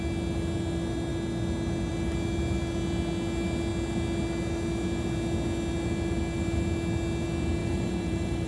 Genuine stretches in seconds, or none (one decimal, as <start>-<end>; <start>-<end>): 0.0-7.6